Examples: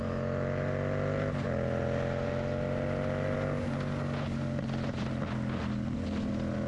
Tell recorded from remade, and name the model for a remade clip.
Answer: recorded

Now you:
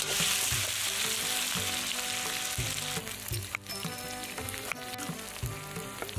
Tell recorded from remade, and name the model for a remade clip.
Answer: recorded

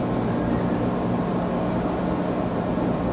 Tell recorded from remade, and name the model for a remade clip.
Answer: recorded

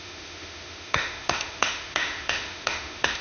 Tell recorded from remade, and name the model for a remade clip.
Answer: remade, autoencoder, DAC-VAE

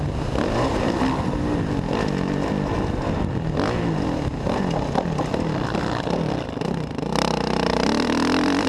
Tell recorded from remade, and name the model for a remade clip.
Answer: recorded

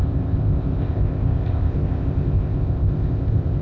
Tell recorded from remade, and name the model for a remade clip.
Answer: remade, codec, ZipCodec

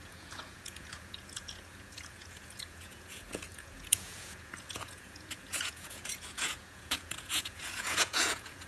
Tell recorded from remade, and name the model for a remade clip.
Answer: remade, vocoder, Vocos